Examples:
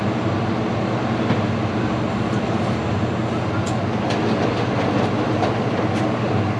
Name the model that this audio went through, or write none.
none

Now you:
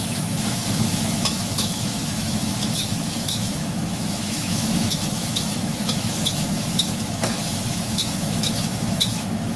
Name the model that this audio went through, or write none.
autoencoder, DAC-VAE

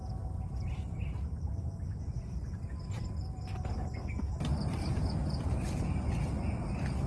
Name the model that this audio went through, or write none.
none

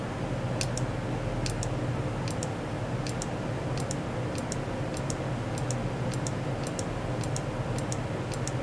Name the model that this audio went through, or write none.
none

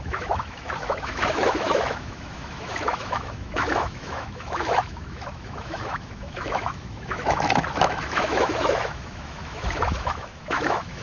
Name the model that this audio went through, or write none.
autoencoder, DAC-VAE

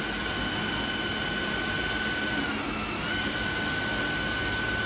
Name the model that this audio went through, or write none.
none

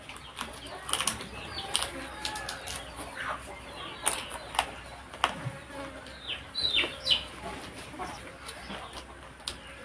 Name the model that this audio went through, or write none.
none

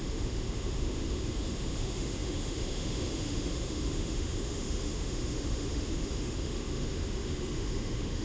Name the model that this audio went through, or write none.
autoencoder, DAC-VAE